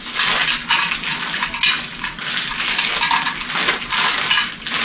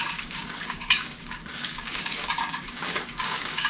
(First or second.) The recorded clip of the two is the first